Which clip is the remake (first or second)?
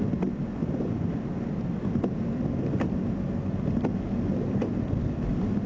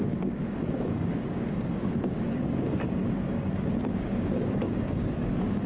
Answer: second